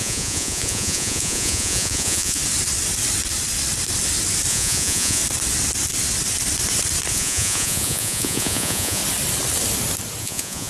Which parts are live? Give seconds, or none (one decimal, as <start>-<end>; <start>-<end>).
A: 2.4-4.5; 5.2-7.1; 9.0-10.2